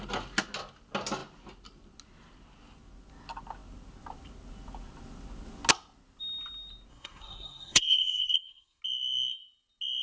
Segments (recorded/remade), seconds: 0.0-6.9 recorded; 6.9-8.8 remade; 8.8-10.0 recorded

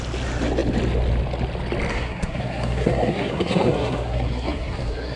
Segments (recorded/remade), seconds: 0.0-1.9 recorded; 1.9-5.2 remade

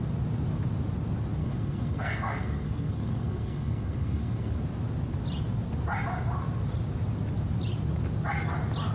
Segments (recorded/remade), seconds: 0.0-1.4 recorded; 1.4-4.6 remade; 4.6-8.9 recorded

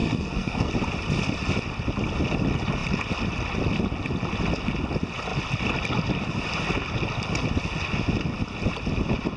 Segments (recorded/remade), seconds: 0.0-0.7 remade; 0.7-9.4 recorded